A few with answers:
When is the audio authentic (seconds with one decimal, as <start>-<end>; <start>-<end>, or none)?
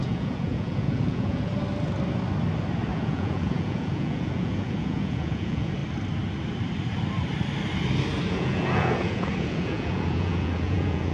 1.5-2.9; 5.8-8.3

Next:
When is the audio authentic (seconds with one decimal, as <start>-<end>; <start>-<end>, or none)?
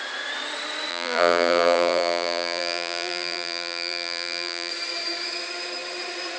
0.0-0.9; 4.7-6.4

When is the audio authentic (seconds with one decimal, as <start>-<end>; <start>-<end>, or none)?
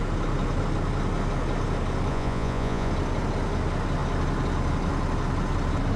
0.0-2.1; 2.9-6.0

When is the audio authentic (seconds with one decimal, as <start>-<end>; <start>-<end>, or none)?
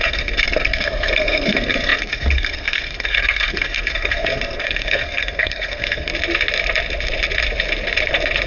6.1-8.5